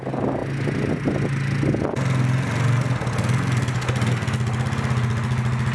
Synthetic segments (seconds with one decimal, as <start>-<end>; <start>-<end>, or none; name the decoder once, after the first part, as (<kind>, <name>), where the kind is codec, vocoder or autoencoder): none